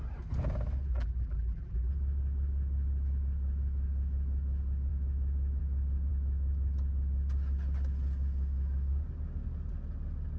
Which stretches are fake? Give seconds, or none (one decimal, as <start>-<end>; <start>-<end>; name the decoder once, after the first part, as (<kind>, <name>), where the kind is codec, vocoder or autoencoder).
0.9-1.9 (vocoder, BigVGAN v2)